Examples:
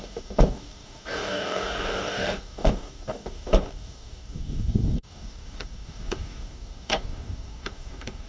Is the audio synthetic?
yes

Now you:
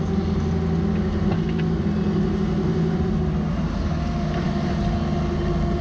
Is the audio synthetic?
no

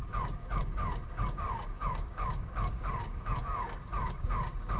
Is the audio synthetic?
yes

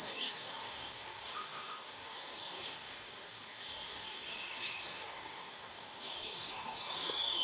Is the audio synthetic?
yes